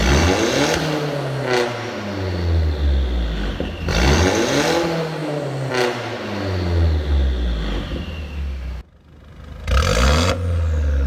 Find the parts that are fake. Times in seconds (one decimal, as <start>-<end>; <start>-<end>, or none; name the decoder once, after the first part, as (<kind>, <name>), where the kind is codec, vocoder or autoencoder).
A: 5.2-5.7 (vocoder, BigVGAN v2)